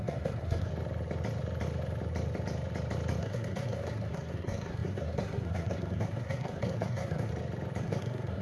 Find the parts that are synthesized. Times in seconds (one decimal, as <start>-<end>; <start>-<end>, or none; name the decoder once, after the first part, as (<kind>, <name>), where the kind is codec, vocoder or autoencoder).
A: 0.0-0.7 (codec, SNAC); 3.2-7.3; 7.8-8.4